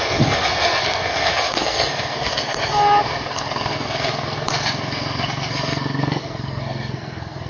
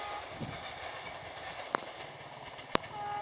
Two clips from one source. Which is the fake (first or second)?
first